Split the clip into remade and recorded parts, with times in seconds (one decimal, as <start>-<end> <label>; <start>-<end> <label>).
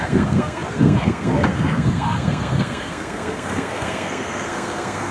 0.0-5.1 remade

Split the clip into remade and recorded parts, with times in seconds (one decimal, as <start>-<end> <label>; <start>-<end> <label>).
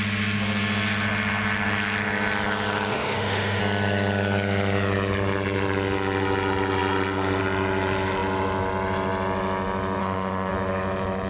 0.0-2.9 recorded; 2.9-3.6 remade; 3.6-10.0 recorded; 10.0-10.5 remade; 10.5-11.3 recorded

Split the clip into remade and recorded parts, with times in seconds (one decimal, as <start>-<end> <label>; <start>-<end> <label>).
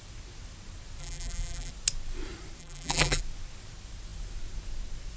0.0-1.0 recorded; 1.0-1.7 remade; 1.7-2.6 recorded; 2.6-3.2 remade; 3.2-5.2 recorded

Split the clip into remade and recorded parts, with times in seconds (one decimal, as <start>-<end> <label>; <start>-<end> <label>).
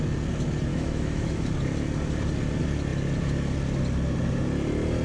0.0-0.7 recorded; 0.7-1.5 remade; 1.5-5.0 recorded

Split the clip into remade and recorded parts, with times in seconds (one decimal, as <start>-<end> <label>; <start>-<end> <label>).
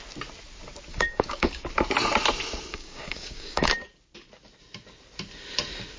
0.0-0.9 recorded; 0.9-1.6 remade; 1.6-2.7 recorded; 2.7-3.7 remade; 3.7-6.0 recorded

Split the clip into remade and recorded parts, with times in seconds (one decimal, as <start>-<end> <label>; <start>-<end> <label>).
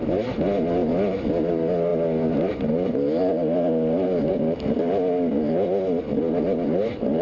0.0-7.2 recorded